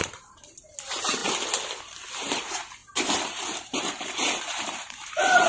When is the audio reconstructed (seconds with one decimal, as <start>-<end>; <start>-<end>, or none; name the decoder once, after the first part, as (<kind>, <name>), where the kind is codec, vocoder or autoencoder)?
0.0-1.2 (vocoder, BigVGAN v2); 1.8-5.5